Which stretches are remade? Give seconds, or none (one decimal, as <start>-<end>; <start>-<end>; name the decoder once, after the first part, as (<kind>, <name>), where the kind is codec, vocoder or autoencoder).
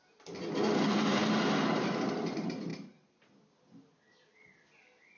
none